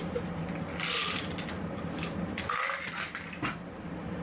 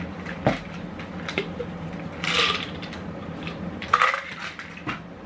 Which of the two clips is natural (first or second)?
first